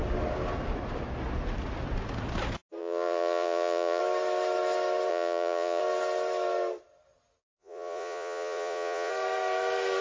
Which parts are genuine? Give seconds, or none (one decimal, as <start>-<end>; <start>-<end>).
0.0-2.8; 4.0-5.1; 5.8-7.4; 9.1-10.0